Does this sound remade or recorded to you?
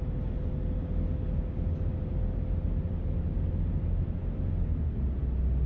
recorded